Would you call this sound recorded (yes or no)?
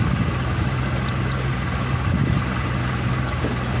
yes